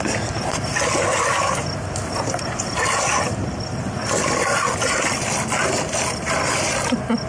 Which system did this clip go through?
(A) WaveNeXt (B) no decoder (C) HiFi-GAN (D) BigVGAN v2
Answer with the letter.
B